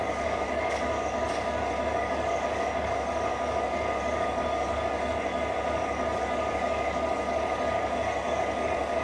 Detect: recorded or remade remade